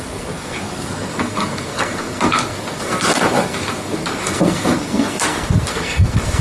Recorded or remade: remade